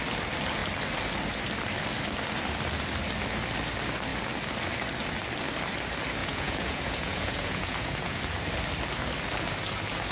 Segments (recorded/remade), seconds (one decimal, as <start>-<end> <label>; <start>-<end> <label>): 0.0-6.2 recorded; 6.2-8.2 remade; 8.2-10.1 recorded

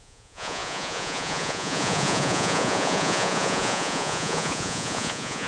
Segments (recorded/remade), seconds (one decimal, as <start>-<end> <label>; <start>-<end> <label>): 0.0-5.5 remade

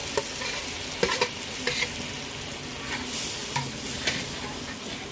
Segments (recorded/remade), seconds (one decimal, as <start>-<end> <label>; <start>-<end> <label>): 0.0-5.1 recorded

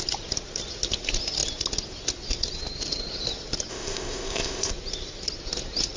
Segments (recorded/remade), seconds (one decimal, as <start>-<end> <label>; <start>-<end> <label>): 0.0-3.7 recorded; 3.7-4.7 remade; 4.7-6.0 recorded

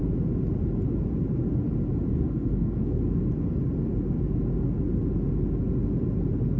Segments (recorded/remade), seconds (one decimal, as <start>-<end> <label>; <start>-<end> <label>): 0.0-2.1 recorded; 2.1-3.0 remade; 3.0-6.6 recorded